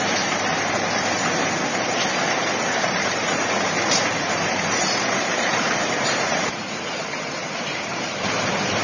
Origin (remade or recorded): remade